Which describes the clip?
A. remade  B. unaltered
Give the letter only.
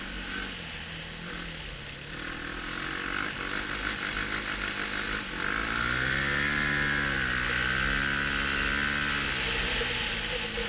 B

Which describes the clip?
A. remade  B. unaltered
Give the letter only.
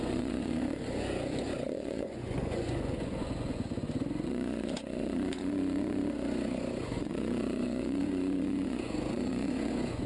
A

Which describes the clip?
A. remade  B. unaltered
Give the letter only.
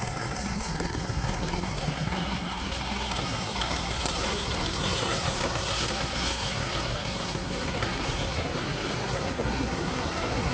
A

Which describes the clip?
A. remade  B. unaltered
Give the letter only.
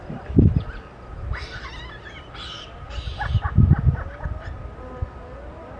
B